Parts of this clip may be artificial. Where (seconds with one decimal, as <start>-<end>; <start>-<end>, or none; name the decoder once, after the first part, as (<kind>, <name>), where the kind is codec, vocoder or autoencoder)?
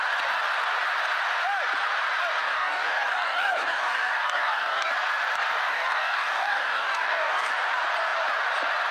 2.4-4.9 (codec, DAC); 5.7-7.5